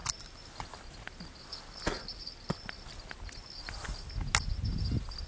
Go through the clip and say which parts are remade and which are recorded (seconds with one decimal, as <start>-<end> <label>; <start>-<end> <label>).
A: 0.0-5.3 recorded